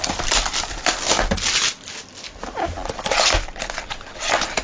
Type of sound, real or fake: real